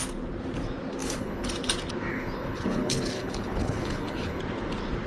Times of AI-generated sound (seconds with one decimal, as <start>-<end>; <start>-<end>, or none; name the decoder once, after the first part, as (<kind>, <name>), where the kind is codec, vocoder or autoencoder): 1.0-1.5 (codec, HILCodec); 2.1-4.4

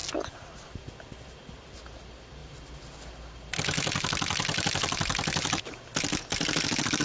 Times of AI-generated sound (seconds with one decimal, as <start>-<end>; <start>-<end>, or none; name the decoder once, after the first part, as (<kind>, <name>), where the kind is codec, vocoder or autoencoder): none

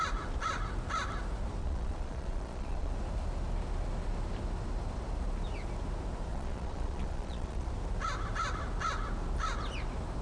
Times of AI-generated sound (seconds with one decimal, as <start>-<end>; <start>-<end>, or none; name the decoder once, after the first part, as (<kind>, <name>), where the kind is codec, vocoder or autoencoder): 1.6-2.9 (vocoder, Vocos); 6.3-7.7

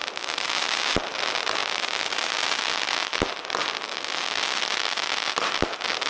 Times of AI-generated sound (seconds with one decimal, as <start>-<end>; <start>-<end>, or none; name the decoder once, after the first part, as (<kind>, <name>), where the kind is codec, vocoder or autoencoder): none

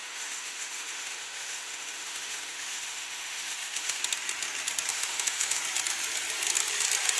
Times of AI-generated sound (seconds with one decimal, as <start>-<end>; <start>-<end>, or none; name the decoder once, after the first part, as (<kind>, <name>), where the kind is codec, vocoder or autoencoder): 0.0-4.0 (autoencoder, DAC-VAE); 4.9-5.6

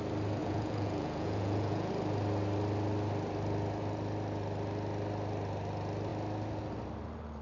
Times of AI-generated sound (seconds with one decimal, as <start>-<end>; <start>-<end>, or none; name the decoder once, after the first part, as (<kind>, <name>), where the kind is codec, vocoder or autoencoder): 0.4-1.9 (vocoder, Vocos)

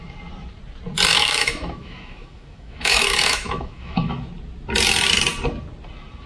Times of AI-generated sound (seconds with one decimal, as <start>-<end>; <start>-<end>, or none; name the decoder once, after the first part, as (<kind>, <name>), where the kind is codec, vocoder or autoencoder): 1.1-4.3 (autoencoder, DAC-VAE)

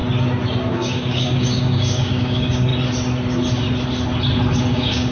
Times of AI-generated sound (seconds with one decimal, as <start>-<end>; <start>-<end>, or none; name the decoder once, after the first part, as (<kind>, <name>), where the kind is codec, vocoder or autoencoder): 0.7-2.7 (codec, DAC); 4.6-5.1